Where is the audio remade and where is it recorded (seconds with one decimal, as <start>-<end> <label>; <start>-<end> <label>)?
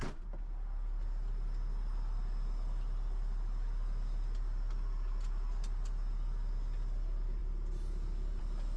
0.0-8.8 recorded